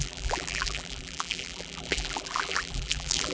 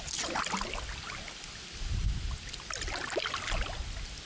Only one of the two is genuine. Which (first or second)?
second